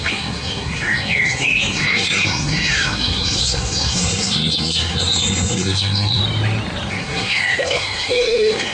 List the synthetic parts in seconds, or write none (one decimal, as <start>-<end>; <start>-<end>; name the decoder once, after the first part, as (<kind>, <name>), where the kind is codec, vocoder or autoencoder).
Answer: 0.0-6.2 (codec, SNAC); 6.9-8.7